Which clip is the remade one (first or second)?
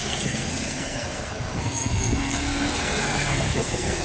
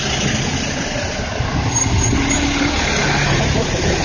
first